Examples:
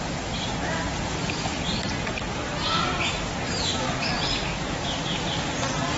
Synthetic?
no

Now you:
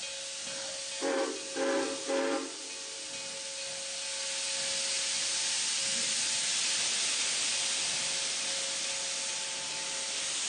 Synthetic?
no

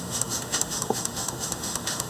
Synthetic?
yes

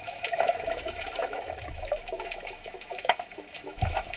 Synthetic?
yes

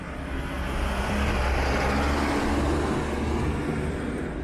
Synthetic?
no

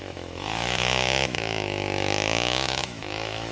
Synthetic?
yes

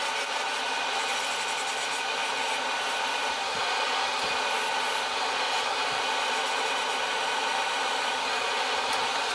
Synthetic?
no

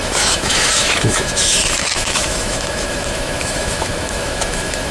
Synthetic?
yes